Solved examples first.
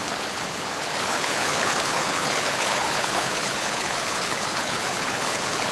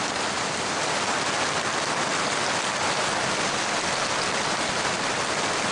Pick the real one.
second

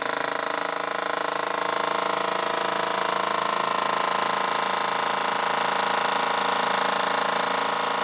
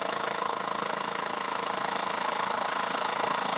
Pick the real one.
first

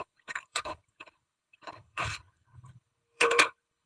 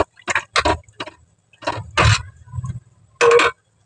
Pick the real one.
second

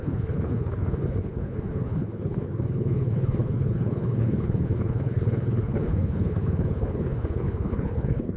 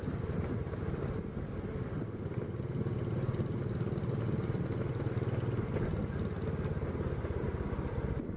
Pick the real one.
second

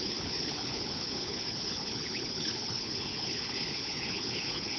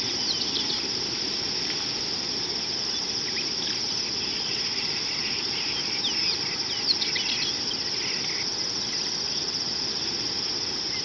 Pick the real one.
second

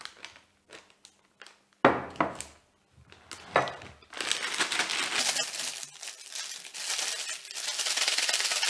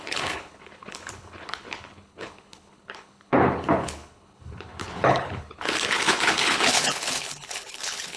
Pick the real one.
first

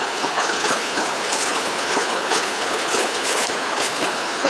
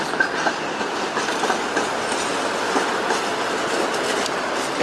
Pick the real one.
second